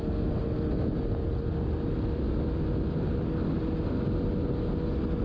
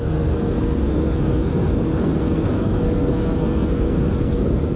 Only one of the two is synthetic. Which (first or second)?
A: second